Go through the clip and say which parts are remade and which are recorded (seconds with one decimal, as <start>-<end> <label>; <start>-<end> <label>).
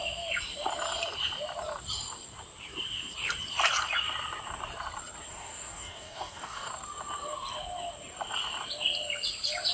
0.0-5.3 recorded; 5.3-6.7 remade; 6.7-9.7 recorded